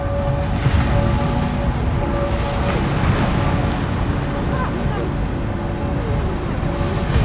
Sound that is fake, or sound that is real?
real